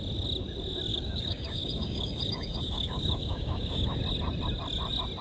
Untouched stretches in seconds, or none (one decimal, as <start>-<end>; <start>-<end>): 0.0-0.9; 4.0-5.2